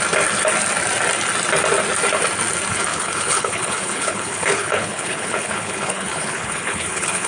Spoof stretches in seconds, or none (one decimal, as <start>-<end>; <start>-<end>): 2.9-7.3